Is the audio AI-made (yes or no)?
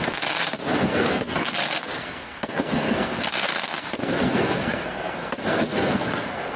yes